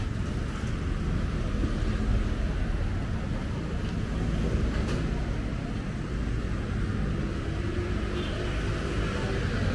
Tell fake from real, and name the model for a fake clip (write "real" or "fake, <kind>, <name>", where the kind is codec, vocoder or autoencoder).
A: real